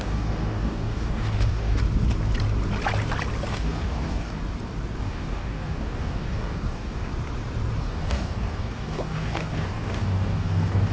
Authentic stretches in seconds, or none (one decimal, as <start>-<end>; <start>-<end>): 1.8-3.5; 4.4-5.0; 7.1-7.8